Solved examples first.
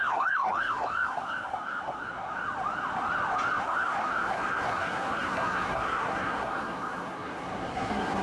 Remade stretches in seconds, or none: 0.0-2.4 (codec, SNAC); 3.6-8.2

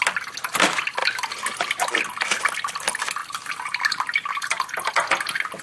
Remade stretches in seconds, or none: 3.2-4.9 (vocoder, BigVGAN v2)

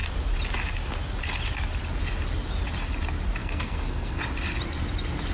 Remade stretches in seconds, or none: 3.4-4.2 (codec, SNAC)

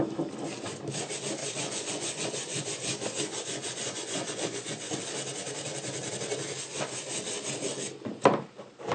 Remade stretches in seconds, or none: 1.4-4.9 (vocoder, Vocos); 6.7-7.2

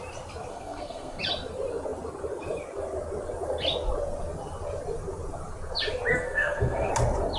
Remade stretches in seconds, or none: 0.5-1.2 (codec, SNAC); 6.1-6.9

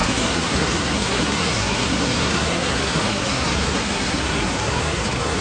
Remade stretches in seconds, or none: 0.0-5.4 (codec, SNAC)